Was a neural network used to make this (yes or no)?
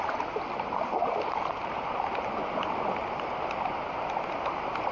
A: no